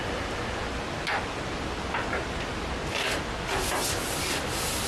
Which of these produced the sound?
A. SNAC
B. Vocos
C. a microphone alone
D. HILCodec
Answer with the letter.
C